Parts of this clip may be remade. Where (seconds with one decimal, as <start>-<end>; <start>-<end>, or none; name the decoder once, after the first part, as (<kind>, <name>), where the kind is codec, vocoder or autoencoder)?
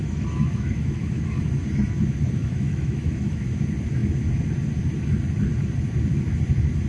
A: 0.0-1.4 (autoencoder, DAC-VAE); 2.4-3.4